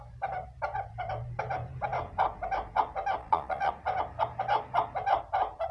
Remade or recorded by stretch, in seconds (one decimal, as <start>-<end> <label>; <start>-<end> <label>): 0.0-3.2 recorded; 3.2-3.7 remade; 3.7-5.7 recorded